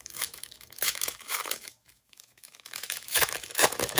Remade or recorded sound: remade